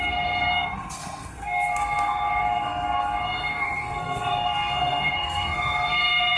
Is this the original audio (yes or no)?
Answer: no